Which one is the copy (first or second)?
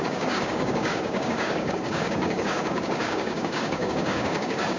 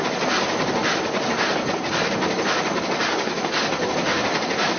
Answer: first